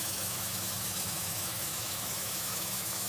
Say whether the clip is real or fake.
fake